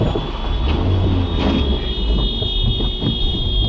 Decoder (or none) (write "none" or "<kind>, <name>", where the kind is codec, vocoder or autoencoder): none